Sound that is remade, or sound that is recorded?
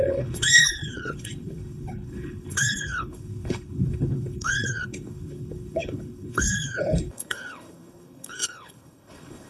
remade